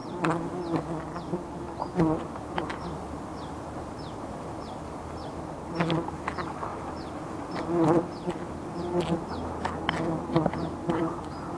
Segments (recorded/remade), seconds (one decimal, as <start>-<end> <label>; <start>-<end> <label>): 0.0-11.6 recorded